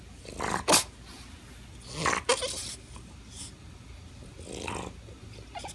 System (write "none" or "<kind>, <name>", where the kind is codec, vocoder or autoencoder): none